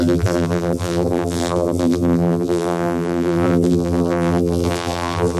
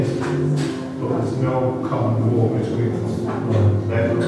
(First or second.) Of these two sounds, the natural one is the second